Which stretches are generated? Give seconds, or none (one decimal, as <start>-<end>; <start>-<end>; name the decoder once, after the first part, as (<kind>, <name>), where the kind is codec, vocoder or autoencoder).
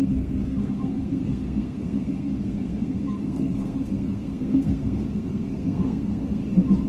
0.0-6.4 (codec, SNAC)